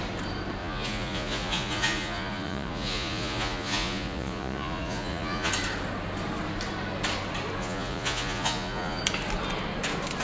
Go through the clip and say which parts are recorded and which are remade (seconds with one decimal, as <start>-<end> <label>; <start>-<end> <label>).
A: 0.0-0.6 recorded; 0.6-5.5 remade; 5.5-7.6 recorded; 7.6-9.0 remade; 9.0-10.2 recorded